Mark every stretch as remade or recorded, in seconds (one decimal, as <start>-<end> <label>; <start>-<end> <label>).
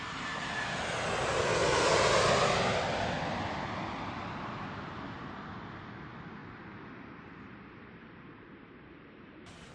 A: 0.0-0.9 remade; 0.9-6.4 recorded; 6.4-9.7 remade